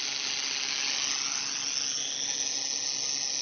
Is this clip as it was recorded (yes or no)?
yes